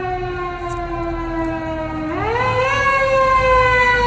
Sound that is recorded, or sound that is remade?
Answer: recorded